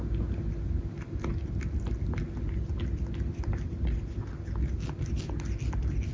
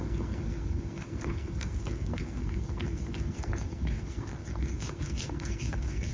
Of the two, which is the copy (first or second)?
second